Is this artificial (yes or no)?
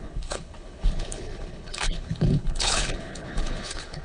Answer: yes